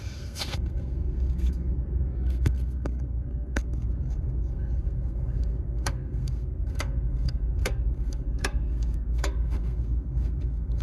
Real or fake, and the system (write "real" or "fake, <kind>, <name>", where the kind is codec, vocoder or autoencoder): fake, codec, SNAC